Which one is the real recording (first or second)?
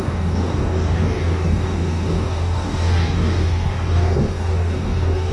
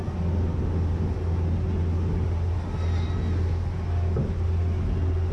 second